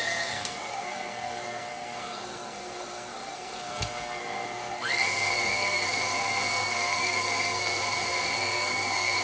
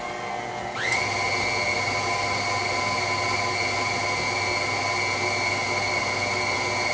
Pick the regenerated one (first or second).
first